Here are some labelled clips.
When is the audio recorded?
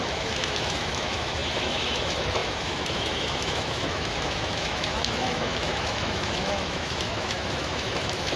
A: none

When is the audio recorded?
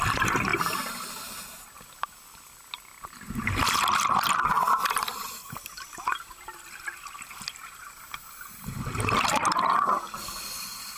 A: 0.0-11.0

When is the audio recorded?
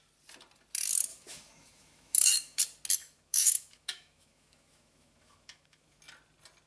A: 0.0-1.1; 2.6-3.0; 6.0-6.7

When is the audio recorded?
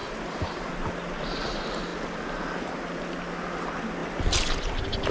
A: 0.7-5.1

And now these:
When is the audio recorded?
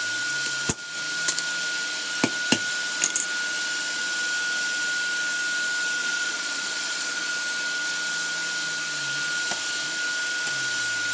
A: 0.0-6.0; 7.3-11.1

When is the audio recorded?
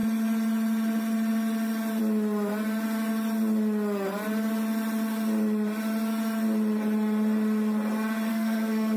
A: 0.0-8.3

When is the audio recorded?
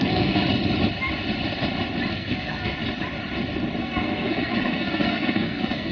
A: 0.4-2.1; 2.8-3.8